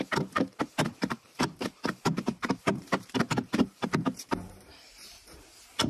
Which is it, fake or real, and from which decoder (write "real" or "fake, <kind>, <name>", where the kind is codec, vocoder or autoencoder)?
fake, vocoder, BigVGAN v2